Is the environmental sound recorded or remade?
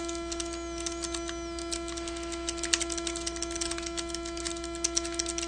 recorded